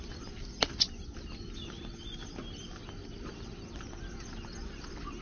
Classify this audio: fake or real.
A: real